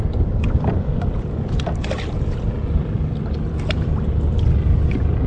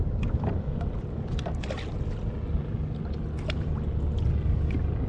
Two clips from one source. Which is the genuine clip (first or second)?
second